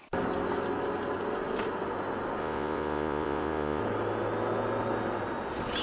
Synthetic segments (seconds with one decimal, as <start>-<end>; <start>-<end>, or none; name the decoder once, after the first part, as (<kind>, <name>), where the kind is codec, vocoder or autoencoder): 2.4-3.8 (vocoder, Vocos)